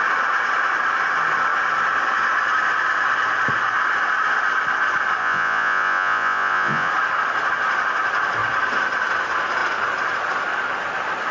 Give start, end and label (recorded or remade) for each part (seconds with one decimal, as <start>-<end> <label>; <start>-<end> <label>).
0.0-5.2 recorded; 5.2-6.9 remade; 6.9-11.3 recorded